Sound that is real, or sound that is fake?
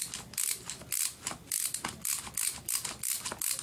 real